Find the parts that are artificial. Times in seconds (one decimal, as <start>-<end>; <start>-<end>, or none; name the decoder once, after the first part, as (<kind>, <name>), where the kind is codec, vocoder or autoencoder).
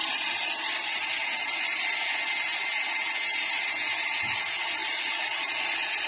4.8-5.5 (vocoder, BigVGAN v2)